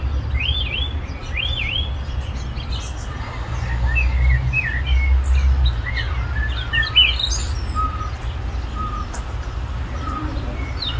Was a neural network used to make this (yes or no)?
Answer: no